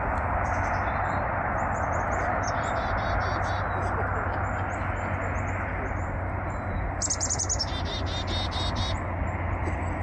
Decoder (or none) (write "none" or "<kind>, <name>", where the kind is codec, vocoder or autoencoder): none